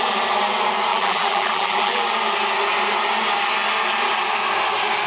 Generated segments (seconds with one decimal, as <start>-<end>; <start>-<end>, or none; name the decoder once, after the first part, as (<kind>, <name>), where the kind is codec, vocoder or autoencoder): 0.9-2.0 (vocoder, BigVGAN v2)